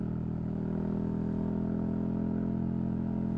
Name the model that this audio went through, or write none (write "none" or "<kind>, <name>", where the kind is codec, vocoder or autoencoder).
none